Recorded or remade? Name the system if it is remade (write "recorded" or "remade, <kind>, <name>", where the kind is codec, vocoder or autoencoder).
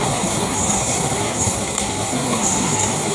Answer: remade, codec, SNAC